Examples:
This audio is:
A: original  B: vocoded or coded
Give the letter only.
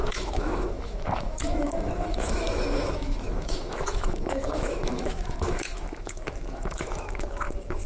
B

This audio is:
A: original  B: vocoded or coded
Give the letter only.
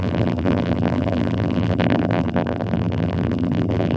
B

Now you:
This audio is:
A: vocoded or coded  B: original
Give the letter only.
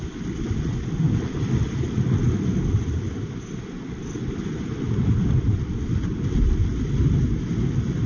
B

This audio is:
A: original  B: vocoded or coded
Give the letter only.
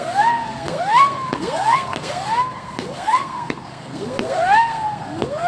B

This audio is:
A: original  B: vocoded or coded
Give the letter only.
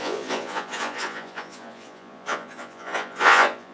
B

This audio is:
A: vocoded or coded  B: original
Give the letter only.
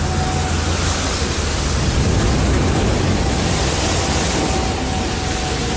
B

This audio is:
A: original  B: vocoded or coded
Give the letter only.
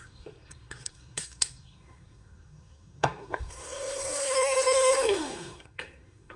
B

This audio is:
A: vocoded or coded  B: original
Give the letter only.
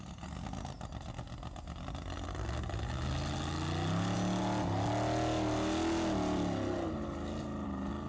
B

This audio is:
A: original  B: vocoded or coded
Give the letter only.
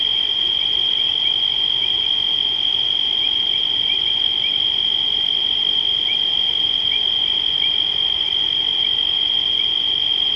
B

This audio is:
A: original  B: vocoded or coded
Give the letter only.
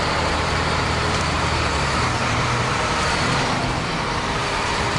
B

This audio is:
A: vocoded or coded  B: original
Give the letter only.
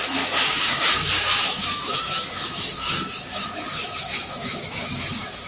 A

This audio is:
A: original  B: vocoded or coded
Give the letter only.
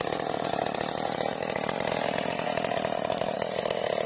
A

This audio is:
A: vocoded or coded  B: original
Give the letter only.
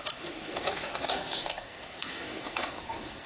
A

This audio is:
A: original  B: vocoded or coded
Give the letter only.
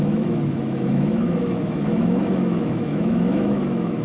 B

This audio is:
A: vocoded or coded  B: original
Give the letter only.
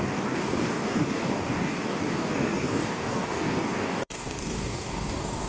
A